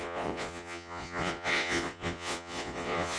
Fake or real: fake